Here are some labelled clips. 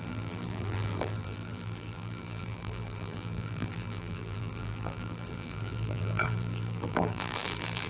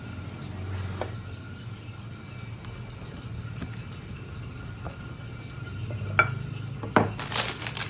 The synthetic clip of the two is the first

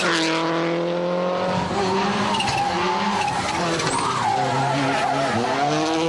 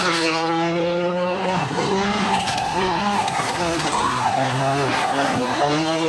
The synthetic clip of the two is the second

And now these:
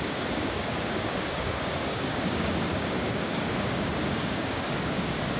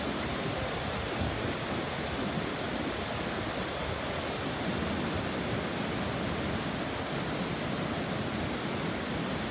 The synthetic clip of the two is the first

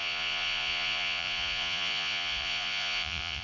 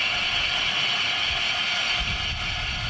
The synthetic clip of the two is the first